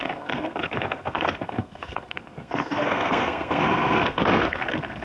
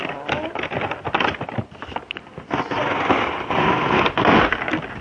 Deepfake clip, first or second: first